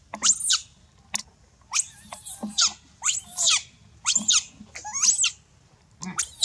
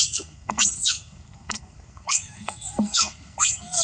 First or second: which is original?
first